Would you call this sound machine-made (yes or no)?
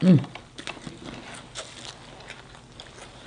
no